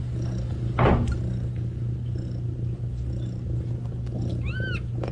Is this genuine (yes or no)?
yes